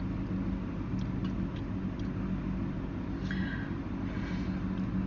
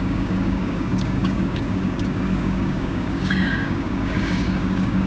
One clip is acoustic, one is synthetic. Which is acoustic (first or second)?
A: first